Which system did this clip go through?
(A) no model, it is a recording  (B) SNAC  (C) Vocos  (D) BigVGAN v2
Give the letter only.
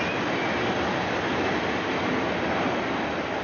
A